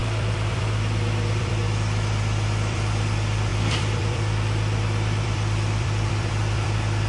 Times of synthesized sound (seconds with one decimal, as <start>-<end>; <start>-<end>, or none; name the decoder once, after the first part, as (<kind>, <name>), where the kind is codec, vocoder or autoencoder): 0.0-7.1 (vocoder, BigVGAN v2)